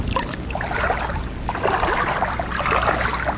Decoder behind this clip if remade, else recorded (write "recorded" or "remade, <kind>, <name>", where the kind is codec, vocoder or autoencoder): recorded